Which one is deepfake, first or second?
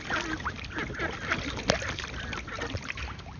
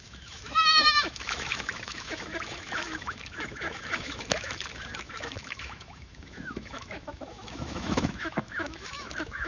second